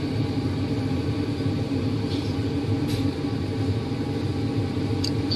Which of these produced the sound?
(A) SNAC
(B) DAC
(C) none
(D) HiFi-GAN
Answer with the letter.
C